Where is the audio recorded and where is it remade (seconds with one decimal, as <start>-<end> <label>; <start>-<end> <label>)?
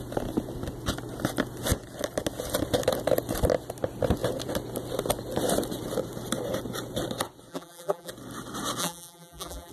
0.0-7.5 recorded; 7.5-8.1 remade; 8.1-8.8 recorded; 8.8-9.7 remade